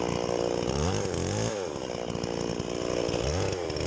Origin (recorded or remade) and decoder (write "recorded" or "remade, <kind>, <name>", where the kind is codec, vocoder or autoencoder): recorded